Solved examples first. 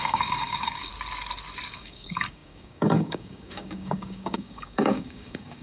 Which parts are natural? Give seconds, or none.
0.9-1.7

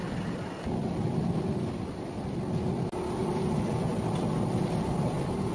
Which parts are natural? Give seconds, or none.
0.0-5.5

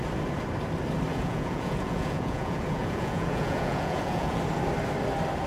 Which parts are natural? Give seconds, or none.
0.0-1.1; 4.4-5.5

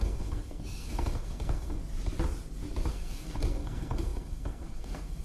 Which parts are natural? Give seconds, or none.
1.8-2.9